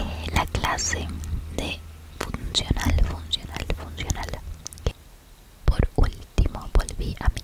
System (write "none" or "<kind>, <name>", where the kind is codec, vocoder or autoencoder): none